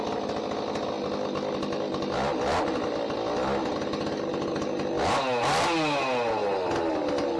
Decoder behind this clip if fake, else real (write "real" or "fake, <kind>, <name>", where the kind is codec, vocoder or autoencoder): real